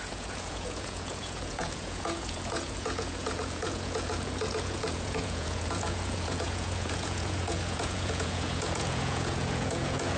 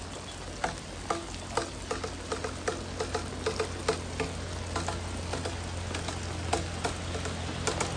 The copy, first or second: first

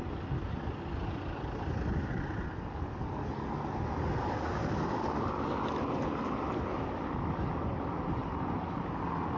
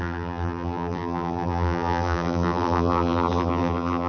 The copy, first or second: second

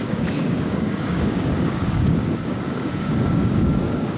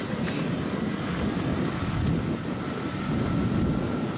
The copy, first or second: first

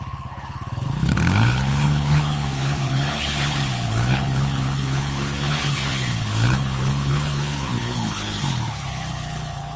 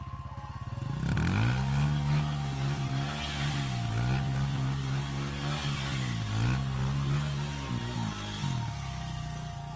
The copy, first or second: first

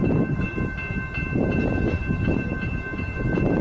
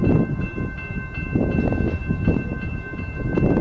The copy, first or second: first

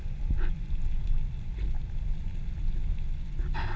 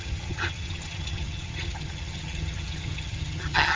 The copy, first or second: second